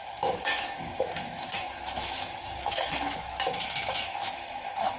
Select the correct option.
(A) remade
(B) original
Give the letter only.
A